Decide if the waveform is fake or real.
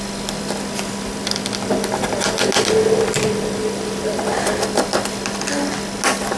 real